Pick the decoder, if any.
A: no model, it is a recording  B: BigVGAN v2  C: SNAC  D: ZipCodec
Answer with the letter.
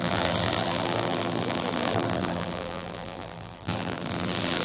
B